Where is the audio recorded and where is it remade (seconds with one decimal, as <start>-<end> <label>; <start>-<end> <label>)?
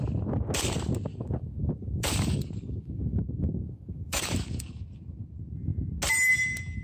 0.0-1.1 recorded; 1.1-4.8 remade; 4.8-6.8 recorded